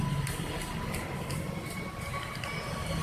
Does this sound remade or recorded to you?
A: recorded